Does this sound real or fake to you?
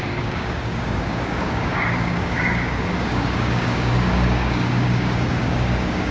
fake